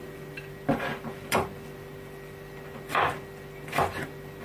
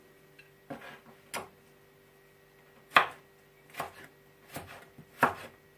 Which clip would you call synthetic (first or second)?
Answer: first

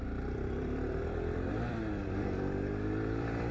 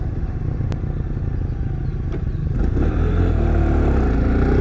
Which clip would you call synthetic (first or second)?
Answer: first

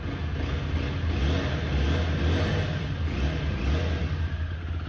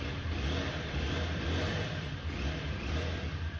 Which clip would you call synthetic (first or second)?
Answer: second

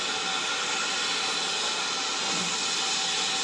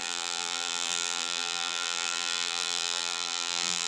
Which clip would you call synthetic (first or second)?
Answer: second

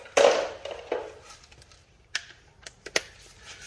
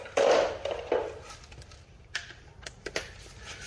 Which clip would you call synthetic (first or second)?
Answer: second